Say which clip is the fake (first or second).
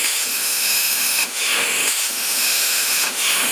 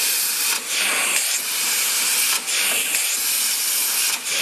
first